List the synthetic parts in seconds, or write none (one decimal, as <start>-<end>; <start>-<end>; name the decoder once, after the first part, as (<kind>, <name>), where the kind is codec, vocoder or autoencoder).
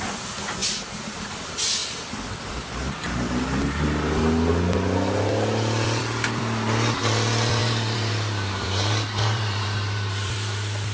0.6-1.3 (vocoder, BigVGAN v2); 7.6-10.5